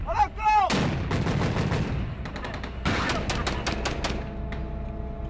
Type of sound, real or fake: real